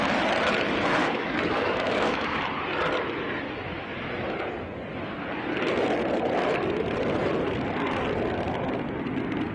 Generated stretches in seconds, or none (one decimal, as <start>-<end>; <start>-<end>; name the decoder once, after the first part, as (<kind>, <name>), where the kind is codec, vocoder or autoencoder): 1.0-2.4 (codec, DAC)